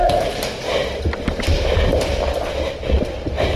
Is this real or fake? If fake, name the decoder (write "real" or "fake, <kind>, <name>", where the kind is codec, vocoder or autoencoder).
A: real